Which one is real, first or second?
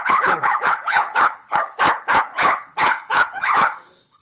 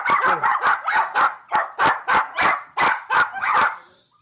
second